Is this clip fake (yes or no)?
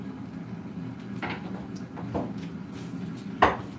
no